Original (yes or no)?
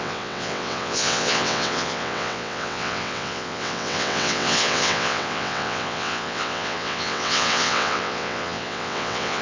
no